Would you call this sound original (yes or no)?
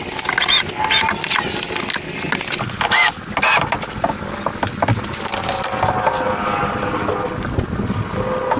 yes